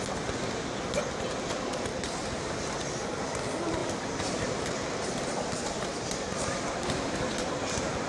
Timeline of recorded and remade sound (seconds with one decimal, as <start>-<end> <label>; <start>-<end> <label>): 0.0-1.9 recorded; 1.9-2.7 remade; 2.7-3.8 recorded; 3.8-7.5 remade; 7.5-8.1 recorded